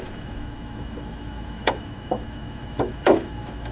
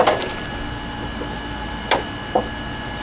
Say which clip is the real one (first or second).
second